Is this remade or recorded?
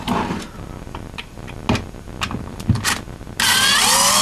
recorded